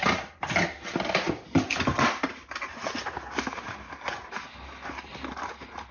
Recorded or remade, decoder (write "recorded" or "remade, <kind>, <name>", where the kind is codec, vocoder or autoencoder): recorded